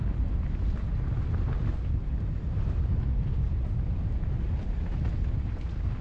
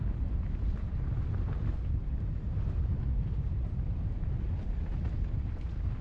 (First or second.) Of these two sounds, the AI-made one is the second